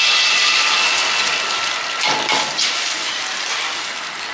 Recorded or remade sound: recorded